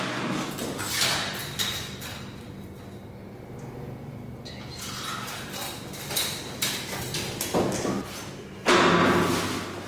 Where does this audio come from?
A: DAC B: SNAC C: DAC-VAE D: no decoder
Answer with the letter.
D